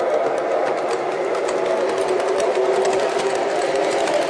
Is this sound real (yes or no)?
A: yes